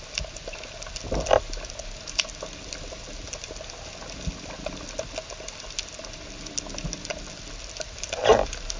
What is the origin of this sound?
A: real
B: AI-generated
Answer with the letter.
A